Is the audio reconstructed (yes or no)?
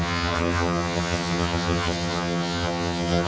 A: yes